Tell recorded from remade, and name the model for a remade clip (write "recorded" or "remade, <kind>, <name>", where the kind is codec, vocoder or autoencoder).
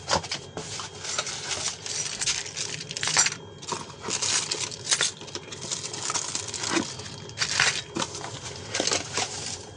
recorded